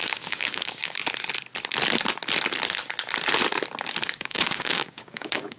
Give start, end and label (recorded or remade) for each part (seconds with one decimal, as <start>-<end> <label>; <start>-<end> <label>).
0.0-1.0 remade; 1.0-4.1 recorded; 4.1-5.6 remade